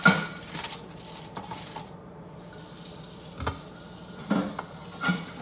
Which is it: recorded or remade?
recorded